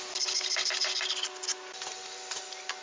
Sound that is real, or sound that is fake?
real